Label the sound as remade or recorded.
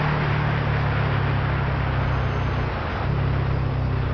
recorded